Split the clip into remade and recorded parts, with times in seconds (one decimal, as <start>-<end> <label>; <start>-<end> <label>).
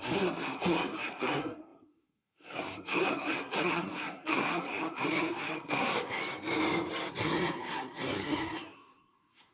0.0-6.2 remade; 6.2-7.1 recorded; 7.1-9.5 remade